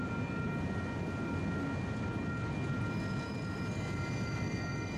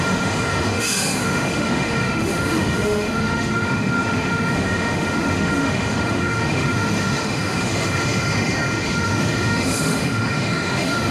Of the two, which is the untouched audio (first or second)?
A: first